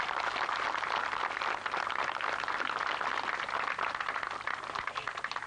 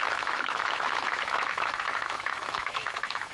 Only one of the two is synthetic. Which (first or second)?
second